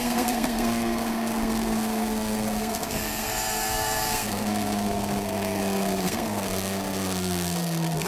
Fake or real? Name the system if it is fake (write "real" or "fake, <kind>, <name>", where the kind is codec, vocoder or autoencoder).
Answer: fake, codec, SNAC